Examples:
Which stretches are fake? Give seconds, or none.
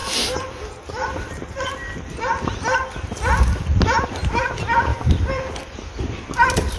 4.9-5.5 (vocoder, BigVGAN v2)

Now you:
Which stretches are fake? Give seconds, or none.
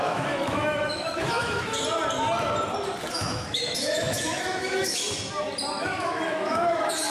0.0-1.7 (autoencoder, DAC-VAE); 3.1-5.0; 5.8-7.1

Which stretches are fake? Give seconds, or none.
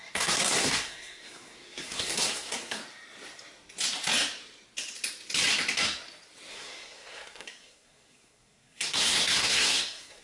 0.0-2.8 (codec, SNAC); 6.5-10.2